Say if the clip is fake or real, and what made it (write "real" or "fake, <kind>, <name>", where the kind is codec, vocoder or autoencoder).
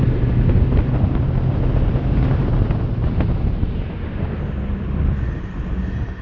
real